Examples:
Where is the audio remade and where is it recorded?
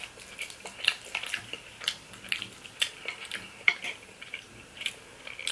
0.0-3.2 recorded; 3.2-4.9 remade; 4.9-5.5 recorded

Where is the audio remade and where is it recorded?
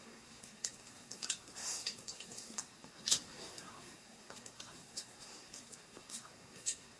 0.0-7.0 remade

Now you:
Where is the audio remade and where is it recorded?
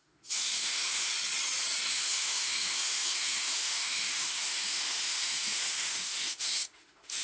0.0-1.1 remade; 1.1-1.9 recorded; 1.9-7.2 remade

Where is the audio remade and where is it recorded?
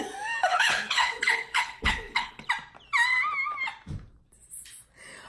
0.0-0.5 recorded; 0.5-2.5 remade; 2.5-5.3 recorded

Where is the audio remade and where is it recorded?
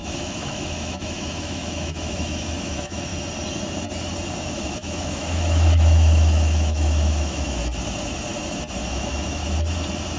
0.0-3.1 remade; 3.1-4.5 recorded; 4.5-7.6 remade; 7.6-8.9 recorded; 8.9-9.4 remade; 9.4-10.2 recorded